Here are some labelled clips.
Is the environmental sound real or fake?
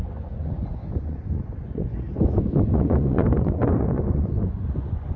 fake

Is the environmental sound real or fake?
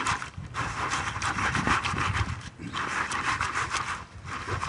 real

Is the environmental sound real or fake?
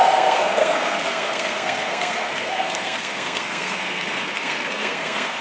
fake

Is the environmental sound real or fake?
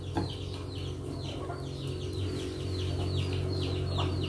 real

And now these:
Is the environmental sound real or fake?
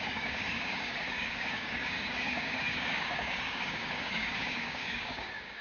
fake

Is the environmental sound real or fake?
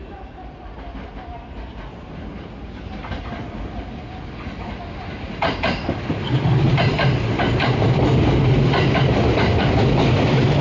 real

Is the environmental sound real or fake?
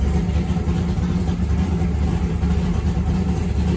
real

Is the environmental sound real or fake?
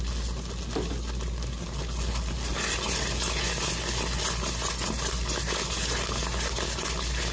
real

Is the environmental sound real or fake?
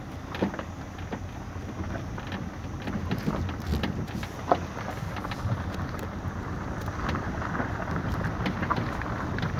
real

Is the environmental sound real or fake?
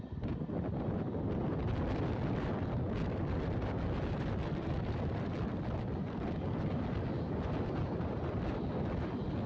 real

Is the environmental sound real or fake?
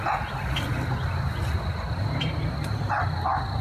real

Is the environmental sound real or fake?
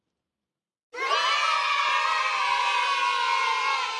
real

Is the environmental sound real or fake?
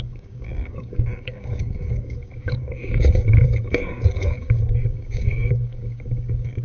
fake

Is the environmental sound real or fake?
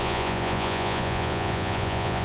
fake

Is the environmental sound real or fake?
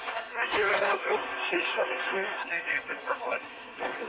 fake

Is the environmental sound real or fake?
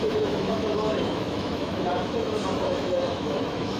fake